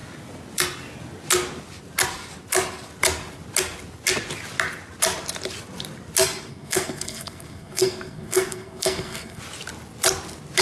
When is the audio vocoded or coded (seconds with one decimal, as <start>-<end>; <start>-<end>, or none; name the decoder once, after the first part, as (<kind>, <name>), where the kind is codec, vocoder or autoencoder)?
6.5-9.4 (codec, SNAC)